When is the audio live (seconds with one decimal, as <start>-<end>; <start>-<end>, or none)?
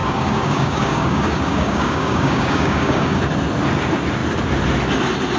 3.2-5.4